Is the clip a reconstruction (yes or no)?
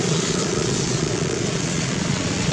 yes